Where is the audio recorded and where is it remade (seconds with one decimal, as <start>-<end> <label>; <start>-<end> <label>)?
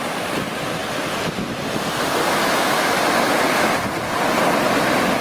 0.0-5.2 recorded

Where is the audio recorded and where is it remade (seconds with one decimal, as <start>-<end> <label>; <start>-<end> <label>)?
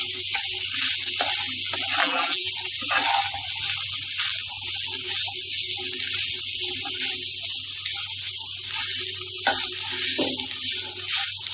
0.0-2.0 recorded; 2.0-2.5 remade; 2.5-11.5 recorded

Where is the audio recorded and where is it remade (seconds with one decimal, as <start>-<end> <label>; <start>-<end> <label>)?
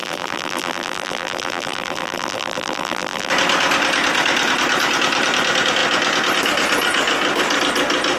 0.0-3.3 remade; 3.3-8.2 recorded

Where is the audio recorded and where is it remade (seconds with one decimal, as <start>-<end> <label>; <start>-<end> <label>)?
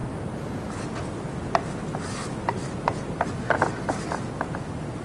0.0-2.2 recorded; 2.2-3.2 remade; 3.2-5.0 recorded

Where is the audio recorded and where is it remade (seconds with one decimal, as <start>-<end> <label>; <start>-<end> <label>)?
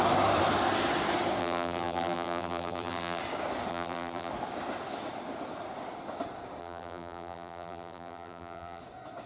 0.0-1.4 recorded; 1.4-3.2 remade; 3.2-3.7 recorded; 3.7-4.3 remade; 4.3-6.6 recorded; 6.6-8.8 remade; 8.8-9.3 recorded